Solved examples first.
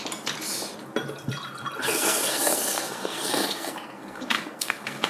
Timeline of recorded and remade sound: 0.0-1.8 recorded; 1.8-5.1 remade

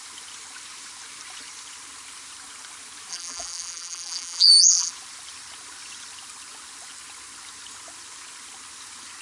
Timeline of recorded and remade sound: 0.0-3.1 recorded; 3.1-4.9 remade; 4.9-9.2 recorded

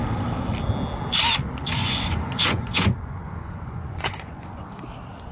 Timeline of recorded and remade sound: 0.0-1.6 recorded; 1.6-4.8 remade; 4.8-5.3 recorded

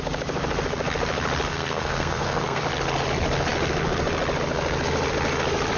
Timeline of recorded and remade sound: 0.0-1.5 recorded; 1.5-2.6 remade; 2.6-5.8 recorded

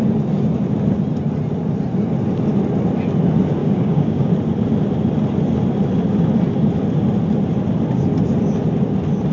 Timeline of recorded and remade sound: 0.0-3.6 recorded; 3.6-4.3 remade; 4.3-9.3 recorded

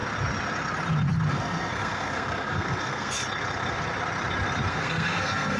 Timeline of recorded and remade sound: 0.0-1.3 recorded; 1.3-3.2 remade; 3.2-4.7 recorded; 4.7-5.6 remade